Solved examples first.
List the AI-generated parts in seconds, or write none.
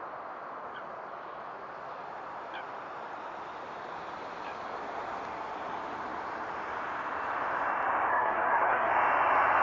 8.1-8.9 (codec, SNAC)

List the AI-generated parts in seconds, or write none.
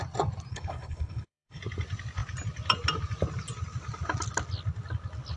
0.5-1.6 (codec, HILCodec)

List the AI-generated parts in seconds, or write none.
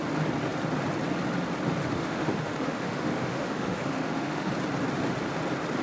1.8-4.5 (autoencoder, DAC-VAE)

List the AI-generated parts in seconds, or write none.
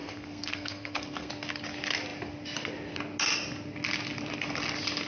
0.0-1.3 (codec, SNAC)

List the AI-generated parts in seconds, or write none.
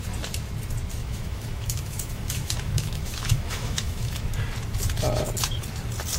1.0-4.3 (autoencoder, DAC-VAE)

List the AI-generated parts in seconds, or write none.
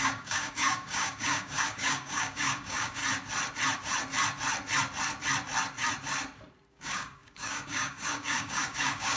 0.0-3.0 (codec, DAC); 6.7-9.2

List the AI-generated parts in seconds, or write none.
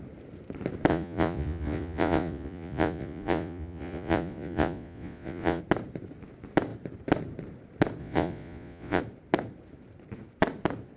0.9-5.6 (vocoder, Vocos); 8.0-9.0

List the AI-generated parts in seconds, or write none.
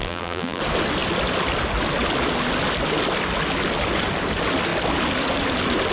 0.0-0.6 (vocoder, BigVGAN v2)